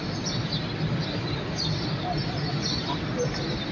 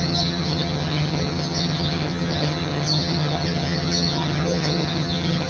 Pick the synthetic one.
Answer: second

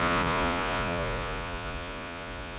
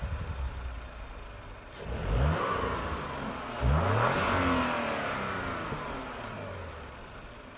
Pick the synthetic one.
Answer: first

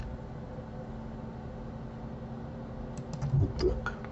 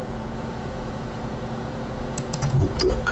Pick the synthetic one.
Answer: second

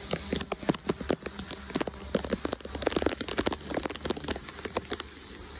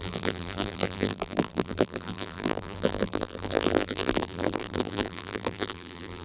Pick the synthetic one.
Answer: second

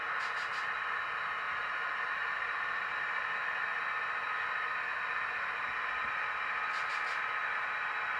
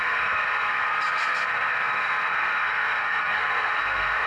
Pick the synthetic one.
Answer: second